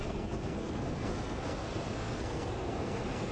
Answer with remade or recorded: remade